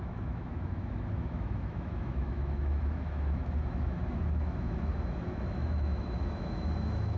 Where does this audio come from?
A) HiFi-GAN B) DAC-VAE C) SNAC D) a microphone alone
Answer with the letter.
B